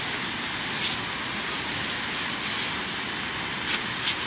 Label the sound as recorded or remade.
recorded